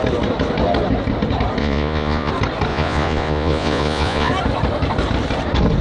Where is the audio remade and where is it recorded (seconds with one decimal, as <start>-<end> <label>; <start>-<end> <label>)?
0.0-1.6 recorded; 1.6-2.3 remade; 2.3-2.7 recorded; 2.7-4.3 remade; 4.3-5.8 recorded

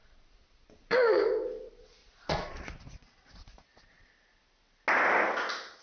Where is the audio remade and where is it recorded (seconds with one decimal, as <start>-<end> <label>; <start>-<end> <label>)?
0.0-1.2 remade; 1.2-2.0 recorded; 2.0-4.1 remade; 4.1-5.8 recorded